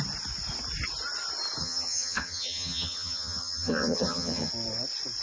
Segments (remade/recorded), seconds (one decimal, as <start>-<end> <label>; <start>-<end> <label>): 0.0-1.6 recorded; 1.6-4.5 remade; 4.5-5.2 recorded